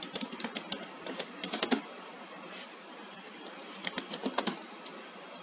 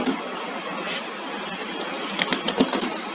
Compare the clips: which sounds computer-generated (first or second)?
first